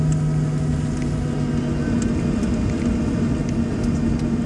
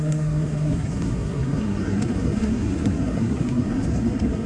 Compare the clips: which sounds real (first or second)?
first